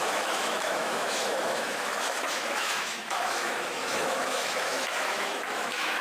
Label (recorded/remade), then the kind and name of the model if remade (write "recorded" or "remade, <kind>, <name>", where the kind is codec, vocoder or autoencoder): remade, autoencoder, DAC-VAE